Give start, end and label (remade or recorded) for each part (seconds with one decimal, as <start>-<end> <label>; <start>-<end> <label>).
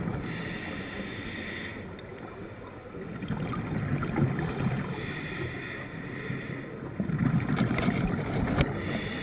0.0-9.2 recorded